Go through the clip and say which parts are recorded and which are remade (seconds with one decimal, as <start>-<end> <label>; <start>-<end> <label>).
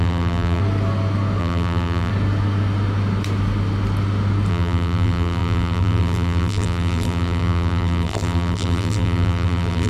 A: 0.0-0.6 remade; 0.6-1.4 recorded; 1.4-2.1 remade; 2.1-4.5 recorded; 4.5-9.9 remade